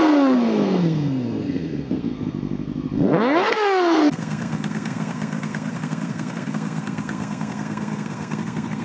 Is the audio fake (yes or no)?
yes